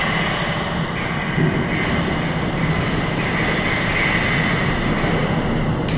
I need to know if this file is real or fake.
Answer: real